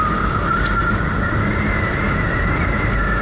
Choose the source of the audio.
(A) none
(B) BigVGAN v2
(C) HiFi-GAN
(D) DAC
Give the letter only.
A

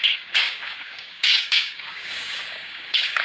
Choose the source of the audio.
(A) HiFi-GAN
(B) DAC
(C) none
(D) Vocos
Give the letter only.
B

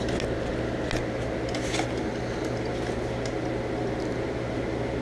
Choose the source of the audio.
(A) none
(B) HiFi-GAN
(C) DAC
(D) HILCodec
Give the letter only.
A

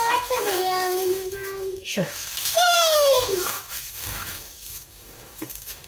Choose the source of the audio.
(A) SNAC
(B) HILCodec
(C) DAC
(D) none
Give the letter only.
C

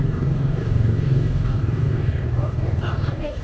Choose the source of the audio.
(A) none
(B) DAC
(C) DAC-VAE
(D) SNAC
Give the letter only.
B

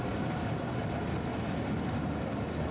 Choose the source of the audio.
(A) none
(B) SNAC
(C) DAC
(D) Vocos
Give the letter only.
A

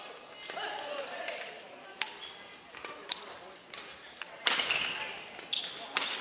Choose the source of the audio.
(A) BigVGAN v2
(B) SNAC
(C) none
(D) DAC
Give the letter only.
C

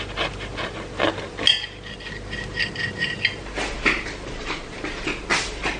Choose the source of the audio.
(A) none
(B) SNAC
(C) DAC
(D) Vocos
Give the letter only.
A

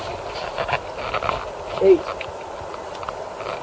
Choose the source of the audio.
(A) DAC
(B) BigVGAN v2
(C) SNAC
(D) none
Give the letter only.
D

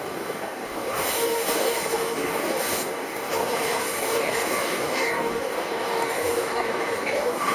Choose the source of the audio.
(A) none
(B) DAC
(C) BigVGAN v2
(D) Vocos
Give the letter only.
B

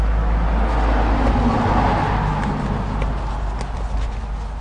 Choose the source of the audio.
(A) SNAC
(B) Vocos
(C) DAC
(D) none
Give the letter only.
D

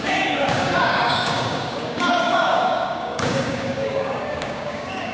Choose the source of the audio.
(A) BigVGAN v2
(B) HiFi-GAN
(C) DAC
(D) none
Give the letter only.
C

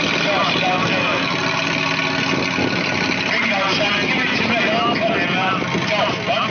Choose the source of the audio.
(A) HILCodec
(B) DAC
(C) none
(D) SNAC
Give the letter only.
C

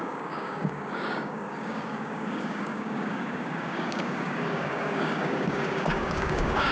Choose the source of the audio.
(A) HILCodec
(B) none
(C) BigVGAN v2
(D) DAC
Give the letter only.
D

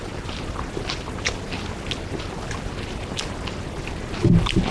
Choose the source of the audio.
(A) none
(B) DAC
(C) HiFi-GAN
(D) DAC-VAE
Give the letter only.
A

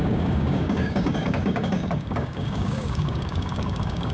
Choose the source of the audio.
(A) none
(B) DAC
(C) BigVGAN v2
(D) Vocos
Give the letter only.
B